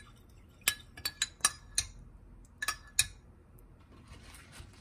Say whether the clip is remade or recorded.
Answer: recorded